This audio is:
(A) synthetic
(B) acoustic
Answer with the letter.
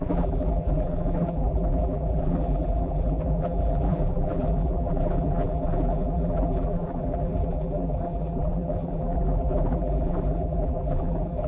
A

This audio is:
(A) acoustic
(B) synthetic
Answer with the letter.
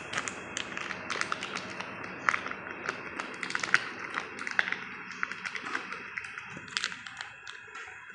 A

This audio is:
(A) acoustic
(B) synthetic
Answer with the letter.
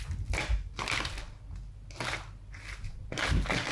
A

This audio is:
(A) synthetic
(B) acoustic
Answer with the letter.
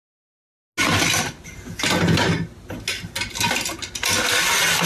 B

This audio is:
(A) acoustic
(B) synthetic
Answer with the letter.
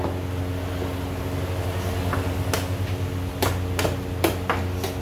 A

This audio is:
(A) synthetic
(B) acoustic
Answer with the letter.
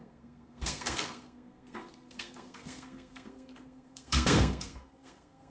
A